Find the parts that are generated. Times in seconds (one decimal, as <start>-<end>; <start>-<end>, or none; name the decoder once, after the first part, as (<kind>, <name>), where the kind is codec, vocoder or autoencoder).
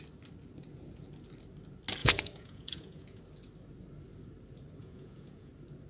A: 2.0-3.2 (vocoder, Vocos); 4.8-5.5